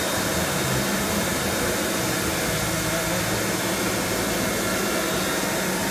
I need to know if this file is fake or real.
real